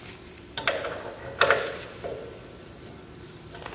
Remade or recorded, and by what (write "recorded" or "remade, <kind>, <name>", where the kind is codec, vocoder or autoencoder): recorded